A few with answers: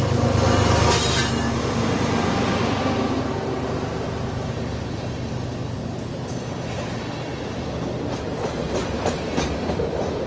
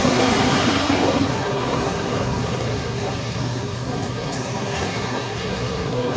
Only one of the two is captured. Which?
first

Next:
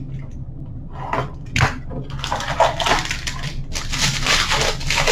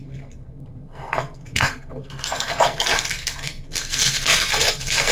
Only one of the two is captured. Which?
first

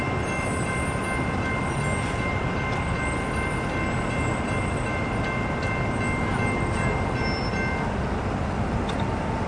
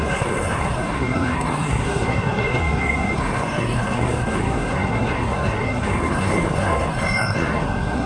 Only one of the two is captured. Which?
first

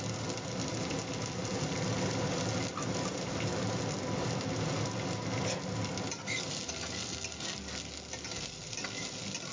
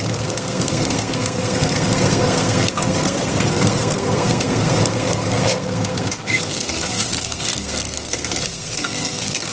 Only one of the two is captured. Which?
first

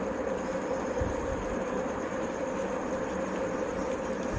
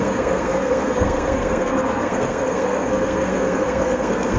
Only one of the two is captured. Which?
first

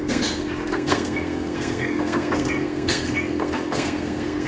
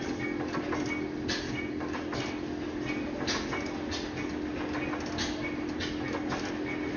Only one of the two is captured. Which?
second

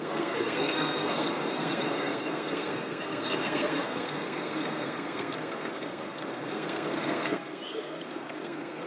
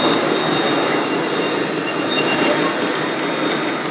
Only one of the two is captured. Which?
second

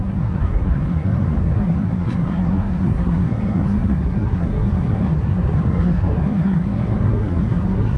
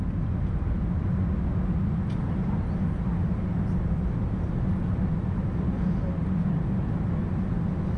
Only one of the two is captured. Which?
second